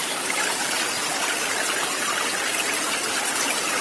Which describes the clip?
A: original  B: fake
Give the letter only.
A